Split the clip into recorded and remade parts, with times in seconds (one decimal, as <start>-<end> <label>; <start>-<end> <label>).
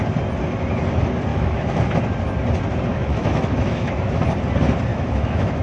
0.0-1.3 recorded; 1.3-1.8 remade; 1.8-2.9 recorded; 2.9-4.2 remade; 4.2-4.9 recorded; 4.9-5.6 remade